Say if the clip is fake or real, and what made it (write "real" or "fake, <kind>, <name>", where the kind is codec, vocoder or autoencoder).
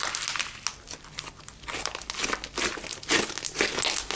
real